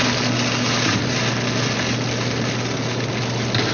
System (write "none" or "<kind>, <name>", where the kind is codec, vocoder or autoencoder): none